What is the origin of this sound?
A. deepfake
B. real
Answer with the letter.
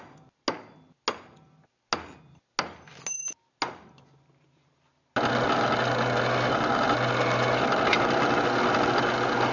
B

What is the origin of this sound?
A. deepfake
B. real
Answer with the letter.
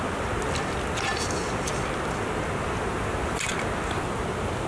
B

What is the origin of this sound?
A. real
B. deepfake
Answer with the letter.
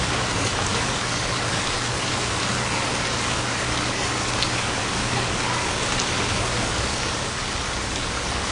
B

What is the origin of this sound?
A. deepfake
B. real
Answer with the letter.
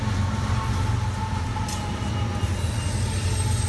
B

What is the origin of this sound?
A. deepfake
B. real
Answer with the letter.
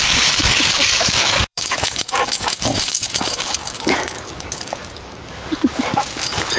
A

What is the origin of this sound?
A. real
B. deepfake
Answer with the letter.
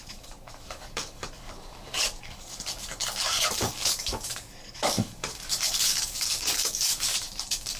B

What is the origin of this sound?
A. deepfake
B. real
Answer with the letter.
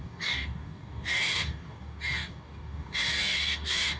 A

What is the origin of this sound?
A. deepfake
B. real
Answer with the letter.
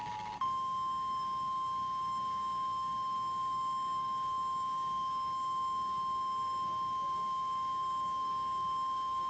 A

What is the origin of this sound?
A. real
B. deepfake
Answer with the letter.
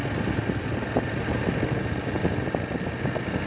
A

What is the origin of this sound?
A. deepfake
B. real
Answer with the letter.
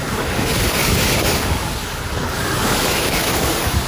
A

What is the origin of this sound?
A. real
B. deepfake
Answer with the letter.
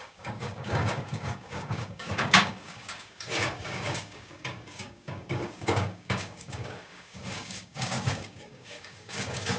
B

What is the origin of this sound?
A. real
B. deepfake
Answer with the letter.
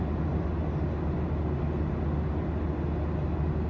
A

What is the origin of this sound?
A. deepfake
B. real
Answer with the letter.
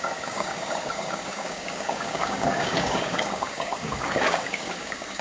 A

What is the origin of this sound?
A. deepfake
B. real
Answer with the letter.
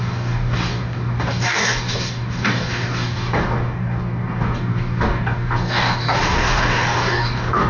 A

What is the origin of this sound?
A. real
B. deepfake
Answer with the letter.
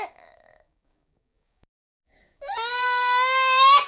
B